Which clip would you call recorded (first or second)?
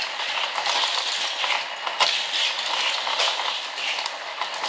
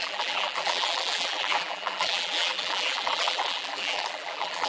first